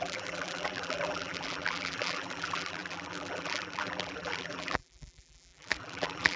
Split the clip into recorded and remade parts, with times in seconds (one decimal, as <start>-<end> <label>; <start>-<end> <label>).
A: 0.0-6.4 remade